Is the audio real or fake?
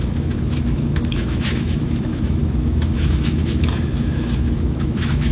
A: fake